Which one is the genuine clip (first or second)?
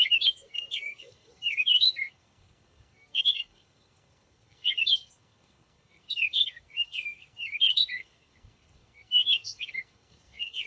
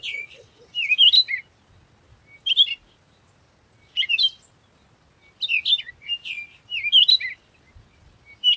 second